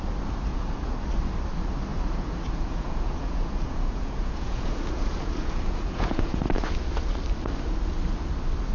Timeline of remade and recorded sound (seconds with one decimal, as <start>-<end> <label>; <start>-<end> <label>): 0.0-0.5 recorded; 0.5-1.0 remade; 1.0-1.9 recorded; 1.9-6.4 remade; 6.4-8.7 recorded